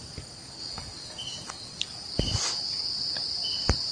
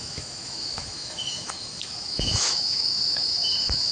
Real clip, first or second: first